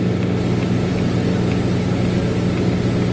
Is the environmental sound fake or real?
real